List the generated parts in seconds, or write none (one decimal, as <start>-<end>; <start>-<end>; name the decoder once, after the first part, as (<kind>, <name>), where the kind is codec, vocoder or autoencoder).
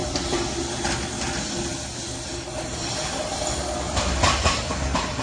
none